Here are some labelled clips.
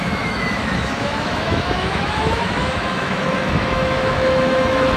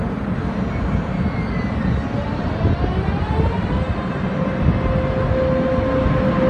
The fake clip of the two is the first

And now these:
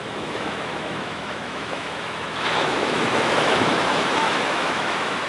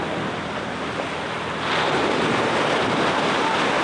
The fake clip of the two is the first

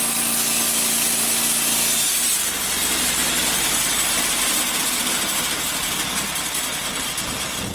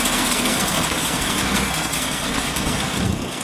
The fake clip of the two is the second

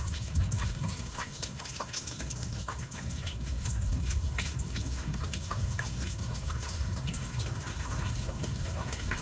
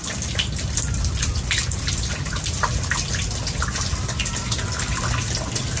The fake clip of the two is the first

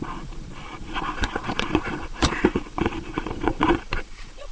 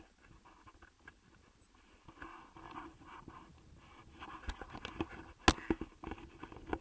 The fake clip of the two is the first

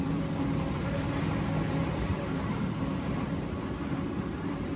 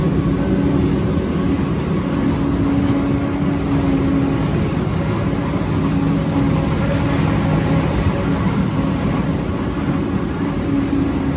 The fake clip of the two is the first